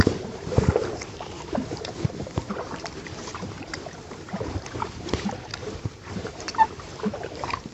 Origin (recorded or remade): remade